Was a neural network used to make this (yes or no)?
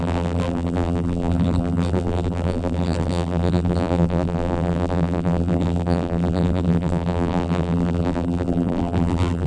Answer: yes